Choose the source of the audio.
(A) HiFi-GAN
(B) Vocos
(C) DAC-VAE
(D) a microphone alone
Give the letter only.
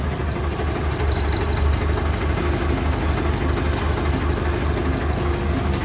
D